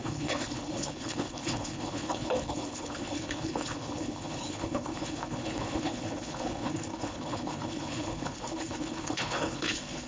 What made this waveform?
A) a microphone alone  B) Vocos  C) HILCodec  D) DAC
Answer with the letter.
C